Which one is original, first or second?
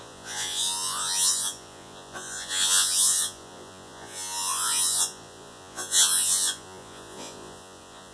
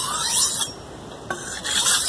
second